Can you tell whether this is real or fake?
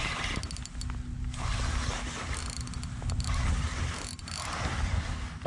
real